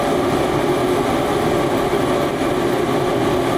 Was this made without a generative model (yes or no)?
yes